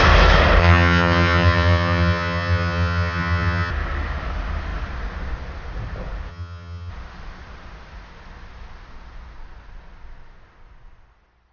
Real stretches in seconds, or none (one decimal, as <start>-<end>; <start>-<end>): 0.0-0.6; 3.7-6.3; 6.9-11.5